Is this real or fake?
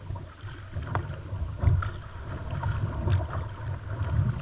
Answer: real